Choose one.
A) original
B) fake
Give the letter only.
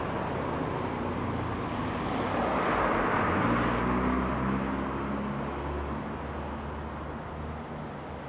A